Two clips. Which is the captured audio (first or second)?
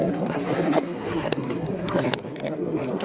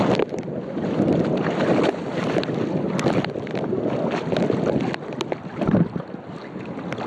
second